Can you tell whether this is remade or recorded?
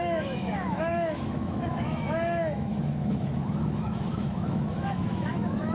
remade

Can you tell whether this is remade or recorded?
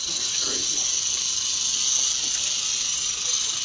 recorded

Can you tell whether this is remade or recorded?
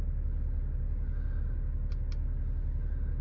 recorded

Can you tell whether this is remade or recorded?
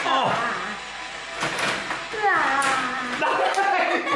recorded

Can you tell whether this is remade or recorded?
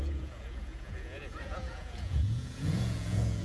remade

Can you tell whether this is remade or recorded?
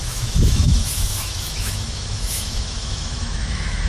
remade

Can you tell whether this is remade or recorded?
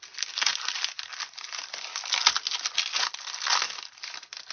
recorded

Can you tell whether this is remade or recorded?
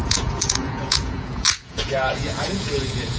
remade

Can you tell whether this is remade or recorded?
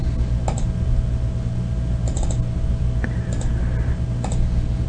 recorded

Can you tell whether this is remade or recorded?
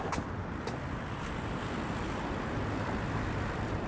remade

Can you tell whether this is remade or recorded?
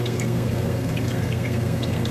remade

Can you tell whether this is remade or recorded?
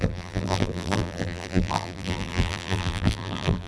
remade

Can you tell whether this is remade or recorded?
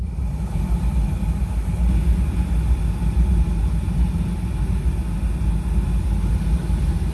recorded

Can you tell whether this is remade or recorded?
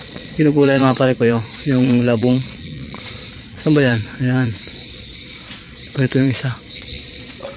remade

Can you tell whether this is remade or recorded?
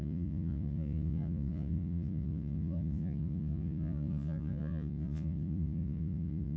remade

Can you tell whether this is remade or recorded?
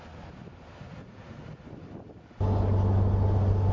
recorded